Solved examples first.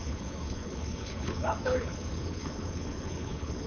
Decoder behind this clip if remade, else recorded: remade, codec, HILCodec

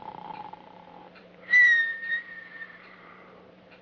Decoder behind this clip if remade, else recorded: remade, vocoder, BigVGAN v2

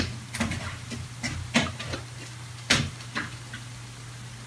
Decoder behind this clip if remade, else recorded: recorded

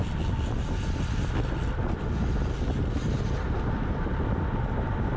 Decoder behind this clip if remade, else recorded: recorded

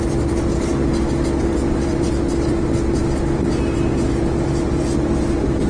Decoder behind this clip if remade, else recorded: recorded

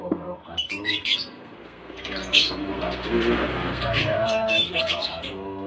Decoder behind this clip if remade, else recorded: remade, codec, SNAC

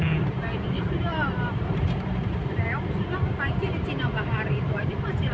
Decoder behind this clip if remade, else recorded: remade, vocoder, BigVGAN v2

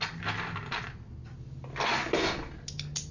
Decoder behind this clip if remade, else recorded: recorded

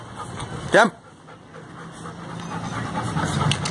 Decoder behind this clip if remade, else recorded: recorded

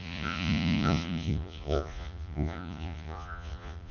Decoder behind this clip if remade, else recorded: remade, vocoder, Vocos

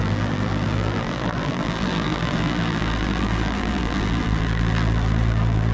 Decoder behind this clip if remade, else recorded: remade, vocoder, BigVGAN v2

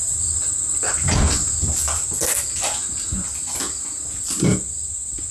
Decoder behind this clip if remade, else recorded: recorded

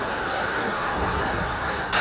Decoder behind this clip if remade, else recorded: remade, codec, SNAC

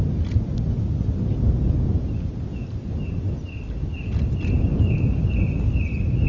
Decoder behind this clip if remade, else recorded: recorded